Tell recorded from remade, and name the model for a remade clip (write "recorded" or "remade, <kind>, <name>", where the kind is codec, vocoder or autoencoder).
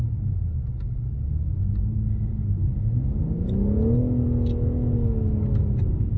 recorded